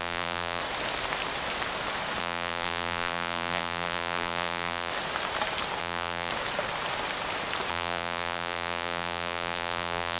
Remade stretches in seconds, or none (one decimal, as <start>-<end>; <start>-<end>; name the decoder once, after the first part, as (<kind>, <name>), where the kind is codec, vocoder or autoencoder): 0.0-0.6 (vocoder, BigVGAN v2); 2.2-4.9; 5.8-6.3; 7.7-10.2

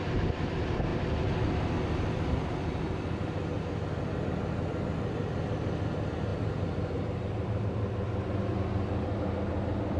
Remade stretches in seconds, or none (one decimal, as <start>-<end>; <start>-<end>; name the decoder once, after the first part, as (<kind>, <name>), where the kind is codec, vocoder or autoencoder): 0.9-1.7 (vocoder, BigVGAN v2); 6.3-7.6

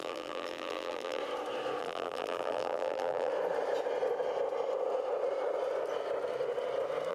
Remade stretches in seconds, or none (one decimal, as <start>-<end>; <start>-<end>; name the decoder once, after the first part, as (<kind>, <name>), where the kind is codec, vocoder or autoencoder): 0.0-1.2 (vocoder, BigVGAN v2); 1.8-3.3

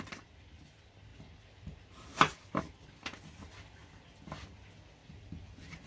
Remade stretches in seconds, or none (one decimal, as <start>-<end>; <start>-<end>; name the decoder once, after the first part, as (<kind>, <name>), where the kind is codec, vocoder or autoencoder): 1.1-2.6 (vocoder, BigVGAN v2); 5.0-5.9

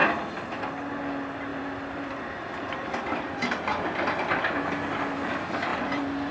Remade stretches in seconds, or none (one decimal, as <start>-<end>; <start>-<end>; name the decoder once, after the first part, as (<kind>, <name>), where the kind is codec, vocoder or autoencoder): 0.0-0.9 (vocoder, BigVGAN v2); 1.5-5.3; 5.7-6.3

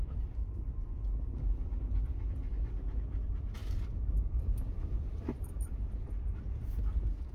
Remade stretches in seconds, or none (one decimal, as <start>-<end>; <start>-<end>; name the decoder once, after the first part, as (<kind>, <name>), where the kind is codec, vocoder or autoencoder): 3.6-5.9 (vocoder, BigVGAN v2)

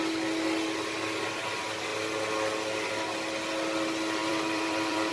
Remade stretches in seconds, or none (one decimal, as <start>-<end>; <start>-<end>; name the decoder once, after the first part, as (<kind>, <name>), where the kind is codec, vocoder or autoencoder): 4.2-5.1 (vocoder, BigVGAN v2)

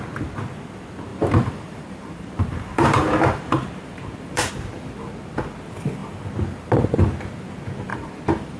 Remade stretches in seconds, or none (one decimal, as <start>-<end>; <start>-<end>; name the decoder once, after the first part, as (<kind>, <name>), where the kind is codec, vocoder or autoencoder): 1.1-4.5 (vocoder, BigVGAN v2); 7.9-8.6